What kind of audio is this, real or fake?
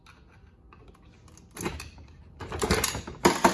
real